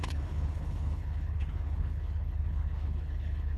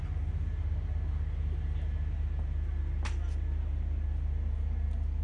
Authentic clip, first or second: second